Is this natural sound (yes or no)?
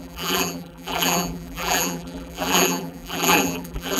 no